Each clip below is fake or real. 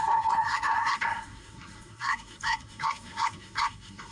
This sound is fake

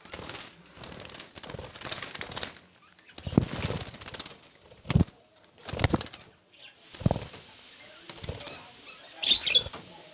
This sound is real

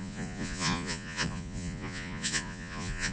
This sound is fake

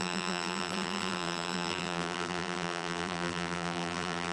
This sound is fake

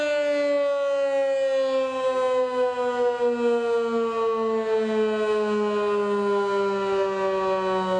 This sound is real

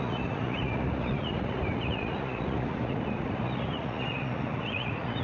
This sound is fake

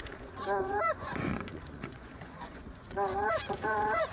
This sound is fake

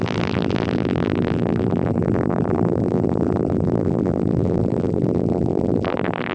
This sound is fake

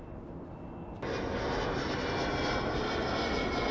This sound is real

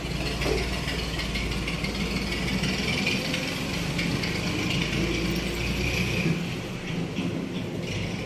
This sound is real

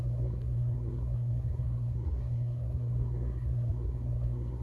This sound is fake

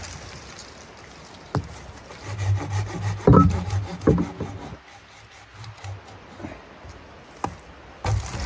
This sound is real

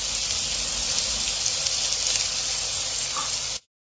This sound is real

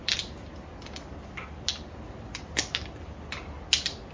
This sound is real